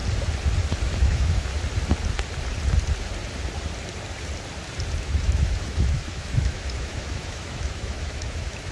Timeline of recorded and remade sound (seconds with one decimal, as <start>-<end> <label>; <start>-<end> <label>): 0.0-1.0 recorded; 1.0-1.5 remade; 1.5-5.0 recorded; 5.0-8.7 remade